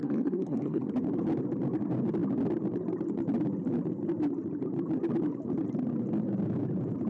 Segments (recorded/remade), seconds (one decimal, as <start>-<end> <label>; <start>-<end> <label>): 0.0-0.9 remade; 0.9-7.1 recorded